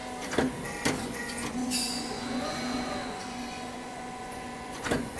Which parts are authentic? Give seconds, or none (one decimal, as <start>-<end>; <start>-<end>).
0.0-1.0